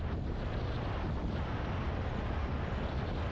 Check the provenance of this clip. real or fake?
real